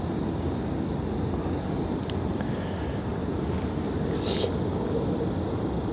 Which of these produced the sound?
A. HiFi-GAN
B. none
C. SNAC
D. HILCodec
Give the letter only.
B